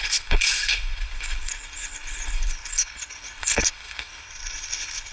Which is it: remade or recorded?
remade